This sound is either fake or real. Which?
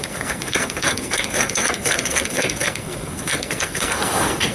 fake